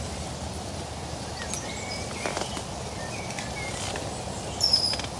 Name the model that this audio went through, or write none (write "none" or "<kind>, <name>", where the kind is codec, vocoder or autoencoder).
none